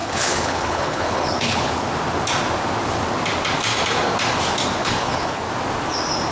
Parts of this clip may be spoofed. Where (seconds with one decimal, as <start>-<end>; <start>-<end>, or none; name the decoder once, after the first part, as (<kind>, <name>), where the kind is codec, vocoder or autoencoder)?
0.0-1.9 (codec, HILCodec); 4.8-5.4